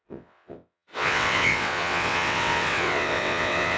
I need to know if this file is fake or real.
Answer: fake